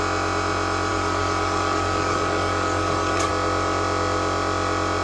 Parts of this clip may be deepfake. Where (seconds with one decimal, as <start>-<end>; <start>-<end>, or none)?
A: 0.9-3.3